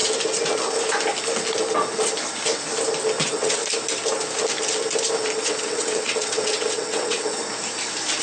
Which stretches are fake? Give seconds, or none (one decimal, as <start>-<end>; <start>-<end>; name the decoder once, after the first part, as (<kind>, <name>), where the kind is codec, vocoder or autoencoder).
3.2-3.6 (vocoder, WaveNeXt); 5.4-7.4